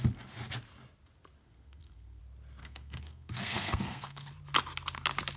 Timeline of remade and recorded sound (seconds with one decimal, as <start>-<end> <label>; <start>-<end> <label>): 0.0-1.4 recorded; 1.4-2.2 remade; 2.2-2.6 recorded; 2.6-4.3 remade; 4.3-5.4 recorded